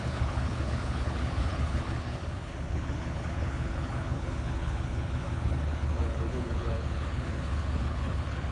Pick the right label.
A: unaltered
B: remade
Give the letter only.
B